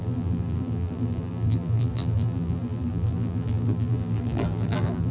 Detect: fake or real fake